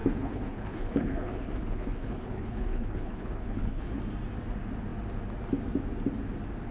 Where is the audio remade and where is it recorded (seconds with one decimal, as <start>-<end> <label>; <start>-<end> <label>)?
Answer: 0.0-4.0 remade; 4.0-6.7 recorded